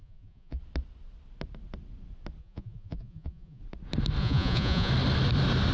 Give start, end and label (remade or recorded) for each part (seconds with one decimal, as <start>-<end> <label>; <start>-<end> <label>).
0.0-0.6 remade; 0.6-2.4 recorded; 2.4-3.6 remade; 3.6-4.2 recorded; 4.2-4.9 remade; 4.9-5.7 recorded